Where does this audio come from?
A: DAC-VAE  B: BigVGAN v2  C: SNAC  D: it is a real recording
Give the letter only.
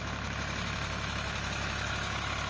A